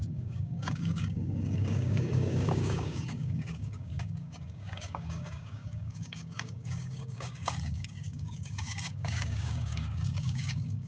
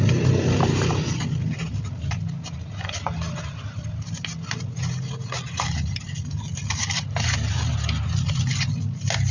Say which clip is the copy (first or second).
first